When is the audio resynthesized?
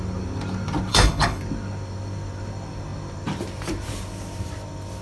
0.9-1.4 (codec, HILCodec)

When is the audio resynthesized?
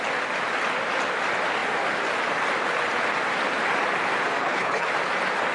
4.4-4.9 (codec, HILCodec)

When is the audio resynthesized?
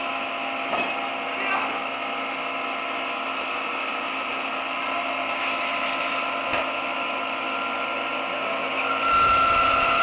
none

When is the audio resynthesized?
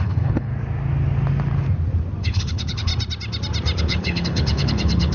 0.0-0.5 (codec, HILCodec); 2.2-2.9; 3.8-5.1